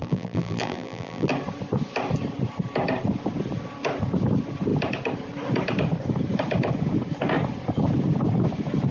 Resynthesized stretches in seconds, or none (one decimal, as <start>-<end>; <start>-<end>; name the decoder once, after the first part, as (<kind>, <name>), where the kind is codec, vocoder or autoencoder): 0.0-1.3 (vocoder, BigVGAN v2)